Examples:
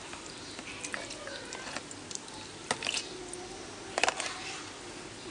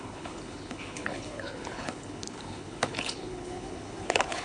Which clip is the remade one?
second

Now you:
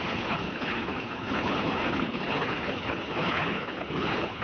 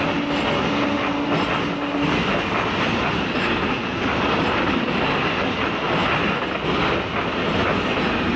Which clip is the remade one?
first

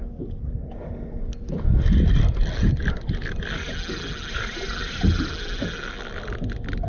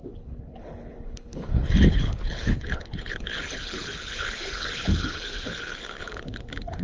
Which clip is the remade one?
second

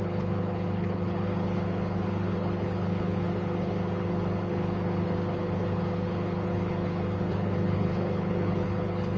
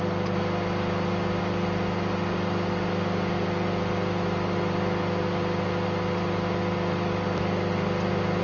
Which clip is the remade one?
first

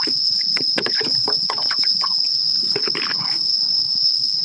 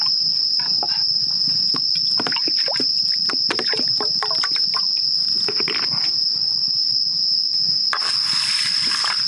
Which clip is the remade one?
first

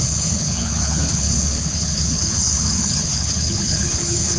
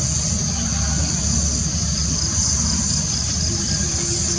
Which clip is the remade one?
first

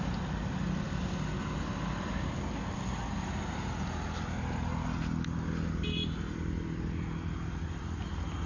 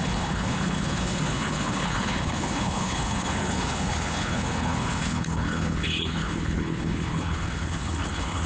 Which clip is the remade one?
second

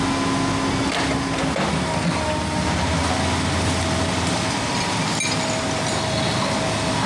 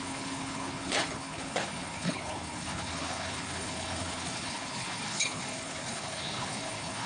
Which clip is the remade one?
second